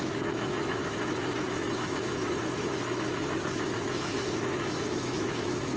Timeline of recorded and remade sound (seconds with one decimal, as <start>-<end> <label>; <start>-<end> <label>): 0.0-5.8 remade